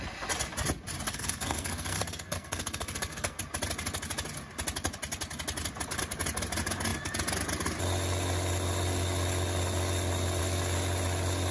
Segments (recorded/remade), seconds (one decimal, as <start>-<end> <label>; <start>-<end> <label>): 0.0-1.1 recorded; 1.1-3.4 remade; 3.4-11.5 recorded